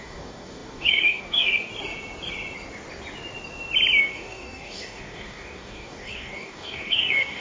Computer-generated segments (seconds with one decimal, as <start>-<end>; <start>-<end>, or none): 0.0-1.7; 4.0-7.4

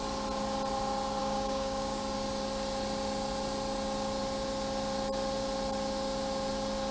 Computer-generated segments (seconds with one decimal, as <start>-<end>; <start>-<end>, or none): 1.2-2.0

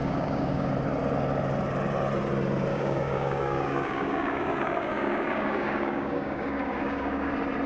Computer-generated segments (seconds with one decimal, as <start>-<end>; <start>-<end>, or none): 0.0-0.7; 2.7-7.3

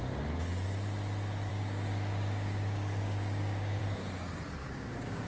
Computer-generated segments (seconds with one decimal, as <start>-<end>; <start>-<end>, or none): 1.5-3.8; 4.6-5.3

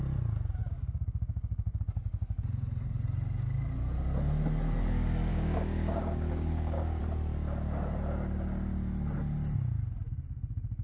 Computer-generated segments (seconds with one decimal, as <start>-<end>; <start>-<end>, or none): 0.6-1.8; 5.3-7.0

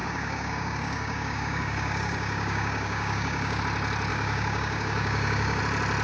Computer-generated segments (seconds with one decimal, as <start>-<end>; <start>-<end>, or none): 0.0-3.6; 4.1-5.6

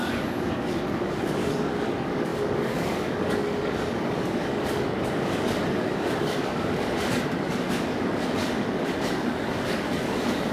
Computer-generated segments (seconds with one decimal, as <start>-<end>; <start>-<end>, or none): 0.0-10.5

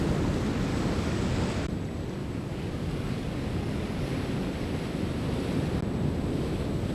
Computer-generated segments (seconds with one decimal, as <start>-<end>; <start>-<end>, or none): 0.7-1.3; 2.2-4.1